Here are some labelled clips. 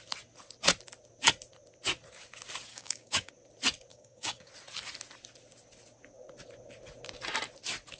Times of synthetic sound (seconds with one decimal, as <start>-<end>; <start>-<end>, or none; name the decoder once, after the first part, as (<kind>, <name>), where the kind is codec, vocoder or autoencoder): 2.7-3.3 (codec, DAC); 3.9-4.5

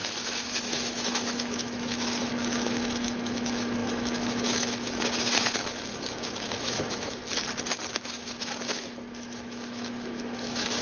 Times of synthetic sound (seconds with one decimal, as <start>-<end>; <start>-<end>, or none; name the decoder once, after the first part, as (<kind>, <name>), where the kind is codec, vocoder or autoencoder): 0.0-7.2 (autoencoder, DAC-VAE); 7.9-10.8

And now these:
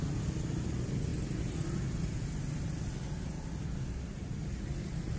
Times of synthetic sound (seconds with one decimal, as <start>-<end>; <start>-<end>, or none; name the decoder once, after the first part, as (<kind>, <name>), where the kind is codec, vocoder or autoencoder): none